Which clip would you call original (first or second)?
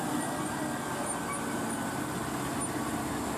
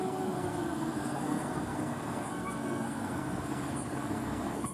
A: first